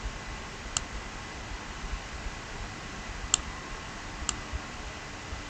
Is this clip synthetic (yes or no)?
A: no